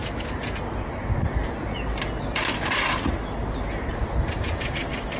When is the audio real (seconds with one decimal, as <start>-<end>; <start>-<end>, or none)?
0.0-5.2